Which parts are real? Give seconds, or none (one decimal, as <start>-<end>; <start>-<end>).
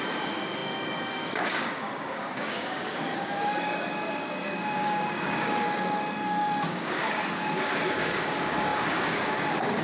none